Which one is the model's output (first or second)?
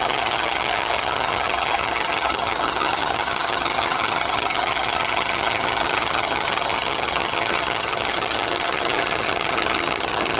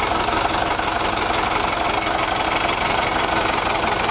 first